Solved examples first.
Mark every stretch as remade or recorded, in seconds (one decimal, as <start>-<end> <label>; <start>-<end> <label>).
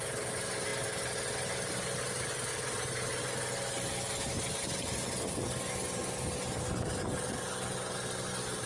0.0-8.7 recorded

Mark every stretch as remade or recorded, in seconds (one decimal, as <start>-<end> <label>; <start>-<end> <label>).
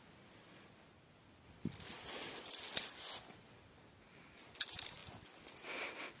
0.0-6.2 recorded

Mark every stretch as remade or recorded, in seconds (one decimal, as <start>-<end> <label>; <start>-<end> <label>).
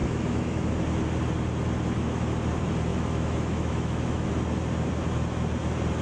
0.0-0.7 remade; 0.7-2.9 recorded; 2.9-4.3 remade; 4.3-6.0 recorded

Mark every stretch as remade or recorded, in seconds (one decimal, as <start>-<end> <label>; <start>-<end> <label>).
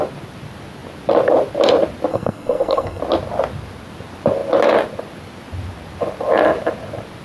0.0-2.1 recorded; 2.1-3.0 remade; 3.0-7.2 recorded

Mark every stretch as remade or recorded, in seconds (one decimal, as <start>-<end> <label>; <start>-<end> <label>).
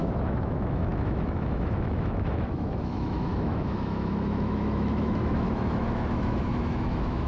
0.0-7.3 remade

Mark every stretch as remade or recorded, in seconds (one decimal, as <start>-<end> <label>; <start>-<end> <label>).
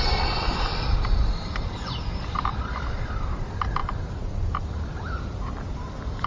0.0-3.8 remade; 3.8-5.2 recorded; 5.2-6.3 remade